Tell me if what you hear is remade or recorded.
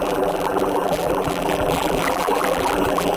remade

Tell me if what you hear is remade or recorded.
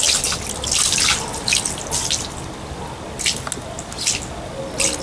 recorded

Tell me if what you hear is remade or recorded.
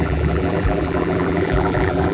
remade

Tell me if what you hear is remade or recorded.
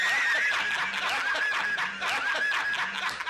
recorded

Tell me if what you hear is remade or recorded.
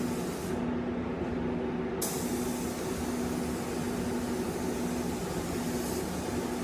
recorded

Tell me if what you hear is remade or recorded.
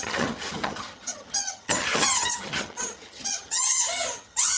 remade